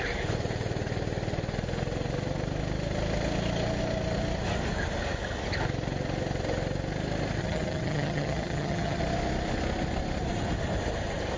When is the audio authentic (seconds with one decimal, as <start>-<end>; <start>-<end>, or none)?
0.0-7.4; 9.0-11.4